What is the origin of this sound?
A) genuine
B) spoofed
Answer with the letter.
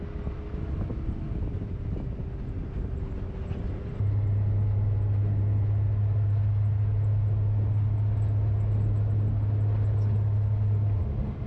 A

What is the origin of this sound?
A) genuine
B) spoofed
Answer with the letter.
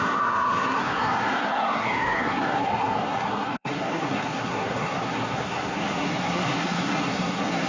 B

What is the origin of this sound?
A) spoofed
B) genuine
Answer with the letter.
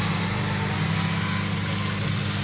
B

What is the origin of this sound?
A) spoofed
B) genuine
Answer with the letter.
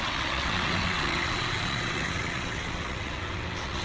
A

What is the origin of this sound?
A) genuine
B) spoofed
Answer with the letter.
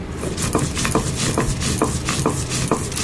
A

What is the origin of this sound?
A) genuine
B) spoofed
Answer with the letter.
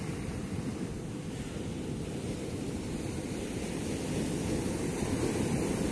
A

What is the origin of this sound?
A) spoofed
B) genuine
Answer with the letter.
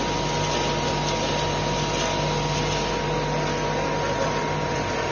B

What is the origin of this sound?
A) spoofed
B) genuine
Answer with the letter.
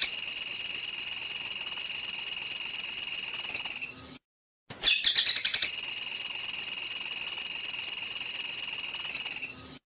B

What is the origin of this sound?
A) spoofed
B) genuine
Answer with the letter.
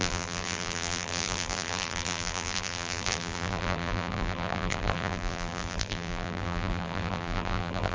A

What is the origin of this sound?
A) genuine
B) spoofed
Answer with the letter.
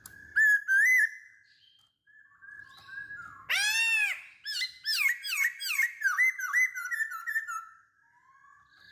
A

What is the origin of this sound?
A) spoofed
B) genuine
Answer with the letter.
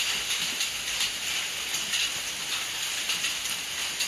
B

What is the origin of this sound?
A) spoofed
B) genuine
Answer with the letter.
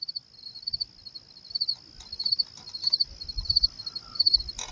B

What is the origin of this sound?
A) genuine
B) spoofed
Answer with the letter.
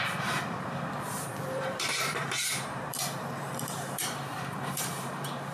B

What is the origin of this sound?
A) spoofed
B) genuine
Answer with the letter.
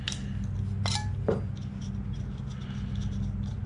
B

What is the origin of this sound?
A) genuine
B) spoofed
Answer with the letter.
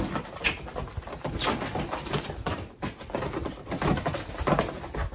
A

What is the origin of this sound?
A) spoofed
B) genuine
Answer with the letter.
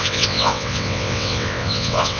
A